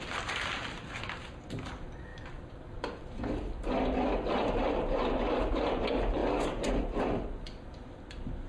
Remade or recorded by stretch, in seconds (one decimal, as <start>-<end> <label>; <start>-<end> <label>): 0.0-6.2 remade; 6.2-6.7 recorded; 6.7-8.5 remade